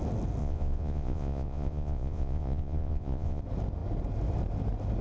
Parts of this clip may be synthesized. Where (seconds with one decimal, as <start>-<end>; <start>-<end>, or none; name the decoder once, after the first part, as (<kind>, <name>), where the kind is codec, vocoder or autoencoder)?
0.4-3.4 (vocoder, Vocos)